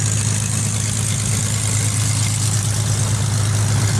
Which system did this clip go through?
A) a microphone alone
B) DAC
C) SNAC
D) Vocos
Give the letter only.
A